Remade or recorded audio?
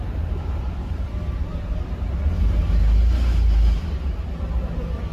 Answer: recorded